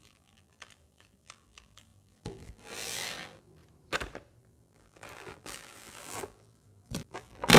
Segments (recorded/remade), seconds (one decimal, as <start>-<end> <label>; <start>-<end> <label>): 0.0-3.6 remade; 3.6-4.4 recorded; 4.4-7.6 remade